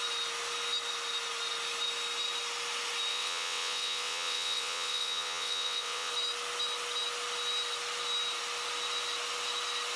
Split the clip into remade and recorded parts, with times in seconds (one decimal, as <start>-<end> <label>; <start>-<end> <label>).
0.0-3.1 recorded; 3.1-6.1 remade; 6.1-10.0 recorded